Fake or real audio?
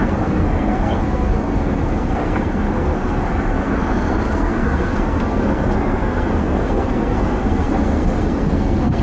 fake